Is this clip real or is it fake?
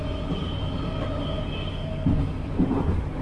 real